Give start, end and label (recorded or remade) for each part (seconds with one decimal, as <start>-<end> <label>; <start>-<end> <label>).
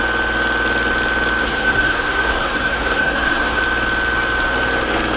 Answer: 0.0-1.4 recorded; 1.4-3.6 remade; 3.6-5.2 recorded